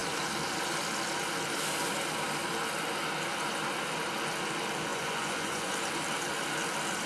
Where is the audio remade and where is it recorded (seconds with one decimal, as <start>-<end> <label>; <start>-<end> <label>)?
0.0-4.9 recorded; 4.9-5.7 remade; 5.7-7.1 recorded